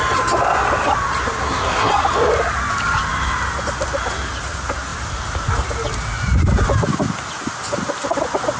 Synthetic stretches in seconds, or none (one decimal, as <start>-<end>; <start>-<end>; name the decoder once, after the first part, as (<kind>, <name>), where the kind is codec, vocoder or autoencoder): 1.4-1.9 (codec, SNAC)